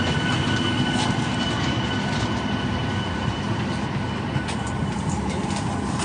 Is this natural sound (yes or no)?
yes